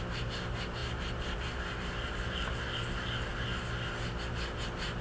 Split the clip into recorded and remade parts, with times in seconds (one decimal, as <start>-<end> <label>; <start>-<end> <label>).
0.0-5.0 recorded